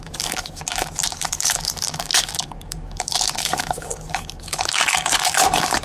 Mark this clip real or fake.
fake